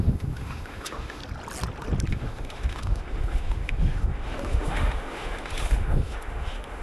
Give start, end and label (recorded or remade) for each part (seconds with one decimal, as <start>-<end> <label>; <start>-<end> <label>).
0.0-1.2 remade; 1.2-2.1 recorded; 2.1-6.8 remade